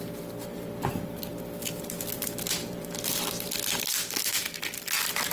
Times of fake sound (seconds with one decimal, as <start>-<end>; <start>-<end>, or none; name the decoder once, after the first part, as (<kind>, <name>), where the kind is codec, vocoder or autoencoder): none